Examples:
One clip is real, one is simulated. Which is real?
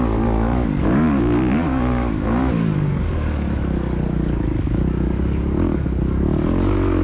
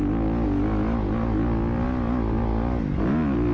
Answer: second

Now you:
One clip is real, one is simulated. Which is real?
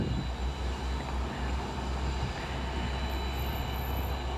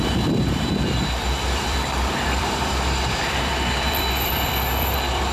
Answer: first